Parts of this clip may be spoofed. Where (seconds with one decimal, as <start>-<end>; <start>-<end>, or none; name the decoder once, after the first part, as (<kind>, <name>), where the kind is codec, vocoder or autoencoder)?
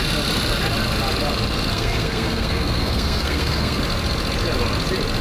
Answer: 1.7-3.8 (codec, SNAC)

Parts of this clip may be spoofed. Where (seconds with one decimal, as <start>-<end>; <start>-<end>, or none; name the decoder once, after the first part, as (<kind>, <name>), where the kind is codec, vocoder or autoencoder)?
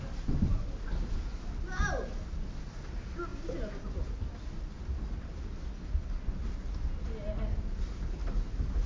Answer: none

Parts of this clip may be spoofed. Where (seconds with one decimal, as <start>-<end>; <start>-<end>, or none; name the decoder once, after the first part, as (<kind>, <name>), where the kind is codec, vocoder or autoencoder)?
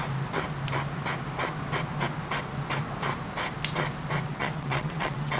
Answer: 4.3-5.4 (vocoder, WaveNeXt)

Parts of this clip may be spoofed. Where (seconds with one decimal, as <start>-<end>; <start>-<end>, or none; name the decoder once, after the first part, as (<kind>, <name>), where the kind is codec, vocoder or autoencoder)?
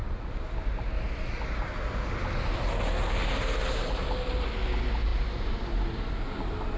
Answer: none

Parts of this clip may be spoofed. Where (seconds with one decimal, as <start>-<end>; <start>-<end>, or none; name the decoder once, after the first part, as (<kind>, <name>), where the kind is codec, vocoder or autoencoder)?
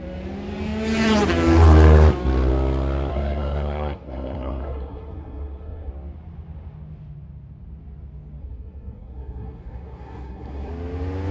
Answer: 3.1-5.9 (codec, SNAC); 8.4-10.7